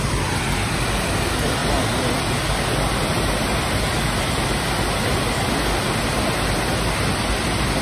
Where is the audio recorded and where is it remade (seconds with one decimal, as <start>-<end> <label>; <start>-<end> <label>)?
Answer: 0.0-7.8 recorded